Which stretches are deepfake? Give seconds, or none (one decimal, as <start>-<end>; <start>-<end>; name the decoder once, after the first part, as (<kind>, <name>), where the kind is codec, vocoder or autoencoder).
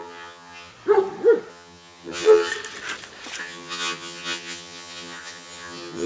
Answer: 0.0-0.7 (vocoder, HiFi-GAN); 1.5-2.5; 3.4-6.1